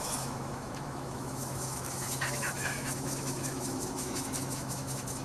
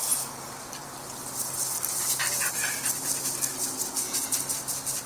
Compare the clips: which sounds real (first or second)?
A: second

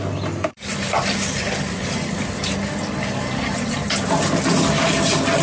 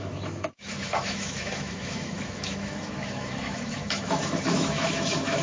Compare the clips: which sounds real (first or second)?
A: first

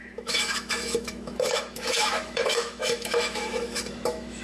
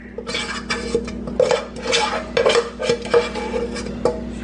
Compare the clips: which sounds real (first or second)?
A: second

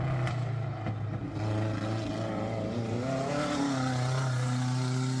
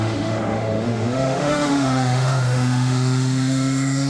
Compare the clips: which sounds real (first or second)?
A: first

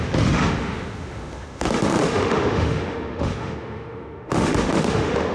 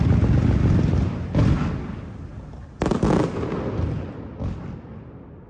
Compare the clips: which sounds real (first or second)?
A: second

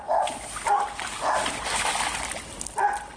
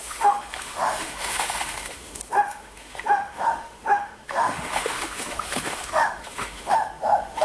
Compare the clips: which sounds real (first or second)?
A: first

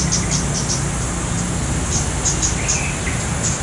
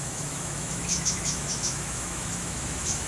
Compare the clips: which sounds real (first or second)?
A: first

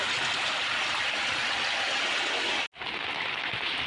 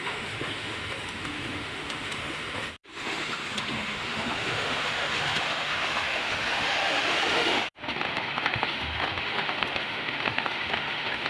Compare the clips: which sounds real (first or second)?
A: first